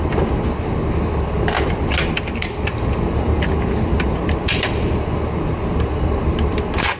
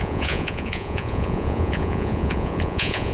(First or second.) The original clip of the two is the first